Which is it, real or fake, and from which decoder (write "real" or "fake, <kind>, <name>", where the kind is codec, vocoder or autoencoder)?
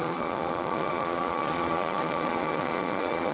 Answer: fake, vocoder, Vocos